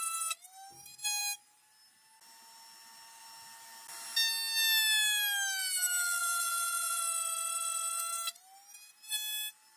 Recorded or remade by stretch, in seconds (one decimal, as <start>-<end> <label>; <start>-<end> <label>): 0.0-6.2 recorded; 6.2-7.0 remade; 7.0-9.8 recorded